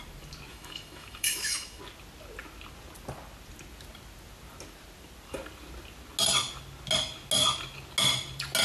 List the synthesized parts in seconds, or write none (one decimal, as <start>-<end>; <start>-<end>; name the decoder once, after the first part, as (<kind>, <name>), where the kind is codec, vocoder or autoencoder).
0.5-1.8 (autoencoder, DAC-VAE)